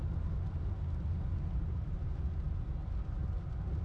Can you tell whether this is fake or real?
real